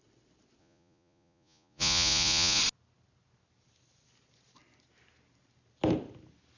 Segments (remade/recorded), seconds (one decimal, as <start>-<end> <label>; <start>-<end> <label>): 0.0-0.6 recorded; 0.6-2.6 remade; 2.6-6.6 recorded